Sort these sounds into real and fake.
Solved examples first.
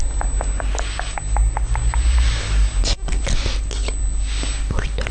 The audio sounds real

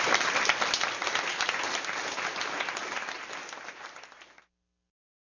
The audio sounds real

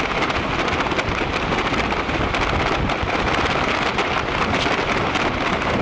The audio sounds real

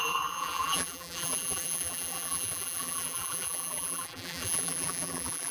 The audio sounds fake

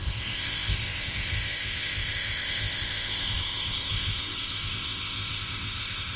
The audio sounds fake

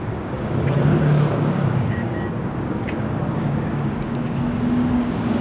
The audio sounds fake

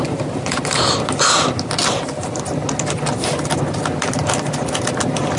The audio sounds real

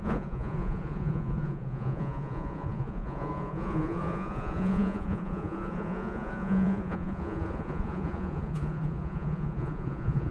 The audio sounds fake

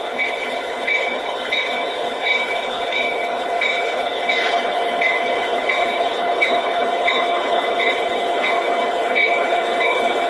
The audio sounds fake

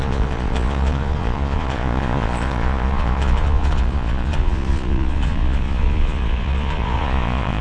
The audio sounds fake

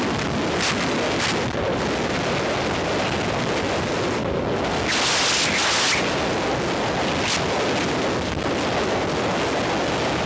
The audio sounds real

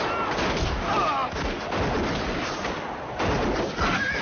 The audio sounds real